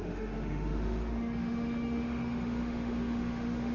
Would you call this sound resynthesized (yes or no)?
yes